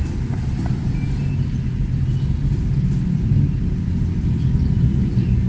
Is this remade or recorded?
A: recorded